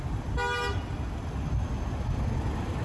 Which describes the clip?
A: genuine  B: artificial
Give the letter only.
A